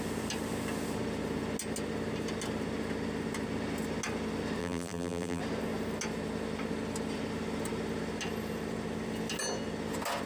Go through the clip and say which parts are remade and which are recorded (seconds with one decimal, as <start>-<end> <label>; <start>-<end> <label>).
0.0-4.6 recorded; 4.6-5.4 remade; 5.4-10.3 recorded